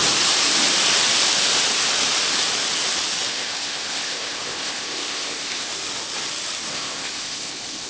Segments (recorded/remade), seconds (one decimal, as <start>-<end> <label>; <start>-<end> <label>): 0.0-3.3 recorded; 3.3-5.7 remade; 5.7-6.7 recorded; 6.7-7.9 remade